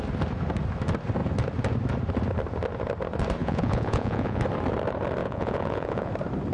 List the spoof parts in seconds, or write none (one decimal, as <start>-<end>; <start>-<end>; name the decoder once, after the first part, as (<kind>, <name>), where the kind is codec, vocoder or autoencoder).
3.4-4.4 (vocoder, Vocos); 5.2-6.1